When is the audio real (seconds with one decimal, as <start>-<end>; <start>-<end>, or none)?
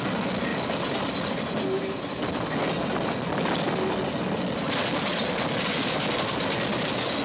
0.0-7.2